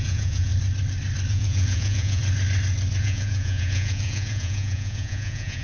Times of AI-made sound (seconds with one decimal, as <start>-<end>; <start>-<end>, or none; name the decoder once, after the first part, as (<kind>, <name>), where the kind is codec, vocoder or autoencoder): 0.0-0.5 (vocoder, Vocos); 1.3-2.2; 3.0-5.6